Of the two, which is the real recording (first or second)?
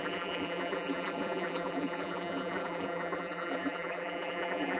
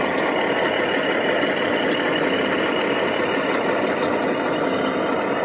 second